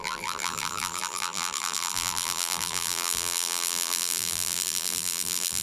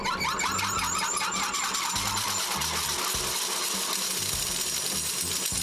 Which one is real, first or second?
second